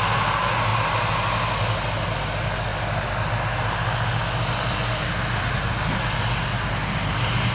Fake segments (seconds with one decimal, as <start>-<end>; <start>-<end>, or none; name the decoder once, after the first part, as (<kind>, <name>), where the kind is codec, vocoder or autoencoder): none